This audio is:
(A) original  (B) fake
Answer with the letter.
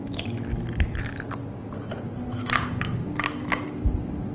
A